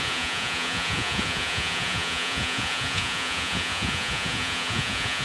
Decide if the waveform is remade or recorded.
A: remade